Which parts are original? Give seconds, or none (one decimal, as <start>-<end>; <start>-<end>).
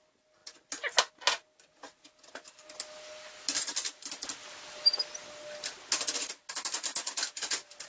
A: 0.0-7.9